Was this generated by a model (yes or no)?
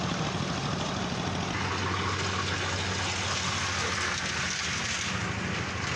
no